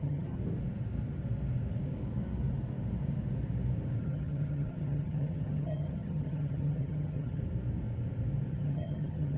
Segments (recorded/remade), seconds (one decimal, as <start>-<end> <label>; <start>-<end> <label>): 0.0-0.4 remade; 0.4-4.0 recorded; 4.0-7.4 remade; 7.4-8.5 recorded; 8.5-9.4 remade